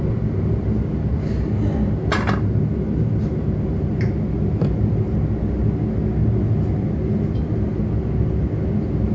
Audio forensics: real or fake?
real